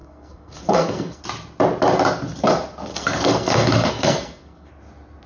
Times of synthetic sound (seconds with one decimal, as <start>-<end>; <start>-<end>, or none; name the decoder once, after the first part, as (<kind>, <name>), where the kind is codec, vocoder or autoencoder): 0.0-1.2 (codec, SNAC); 2.9-4.7